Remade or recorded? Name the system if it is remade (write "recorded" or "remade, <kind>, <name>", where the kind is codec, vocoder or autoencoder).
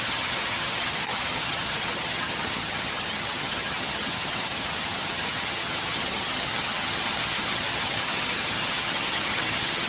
remade, vocoder, HiFi-GAN